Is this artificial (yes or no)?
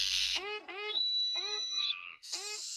yes